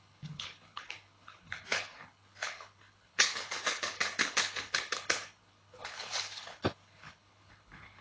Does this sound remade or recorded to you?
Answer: remade